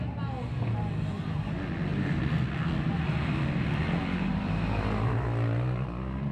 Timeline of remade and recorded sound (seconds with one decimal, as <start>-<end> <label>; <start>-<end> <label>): 0.0-6.3 recorded